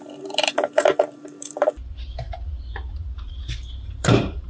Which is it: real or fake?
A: fake